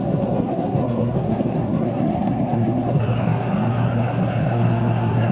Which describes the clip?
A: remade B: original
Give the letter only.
A